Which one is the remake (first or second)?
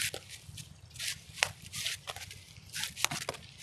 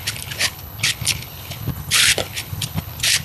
second